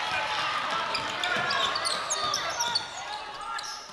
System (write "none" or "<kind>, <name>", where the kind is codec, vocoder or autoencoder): none